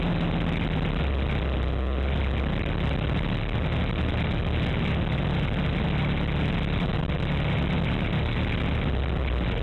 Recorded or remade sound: recorded